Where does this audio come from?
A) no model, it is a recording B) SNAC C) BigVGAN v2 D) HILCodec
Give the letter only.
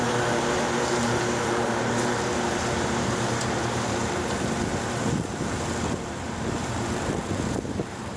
C